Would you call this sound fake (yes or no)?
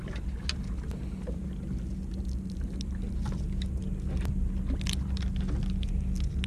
no